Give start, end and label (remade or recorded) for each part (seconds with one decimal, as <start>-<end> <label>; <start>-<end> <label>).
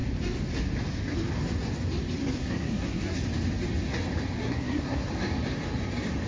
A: 0.0-2.2 recorded; 2.2-3.2 remade; 3.2-4.4 recorded; 4.4-5.1 remade; 5.1-6.3 recorded